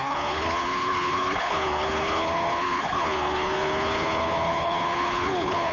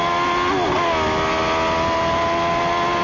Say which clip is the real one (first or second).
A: second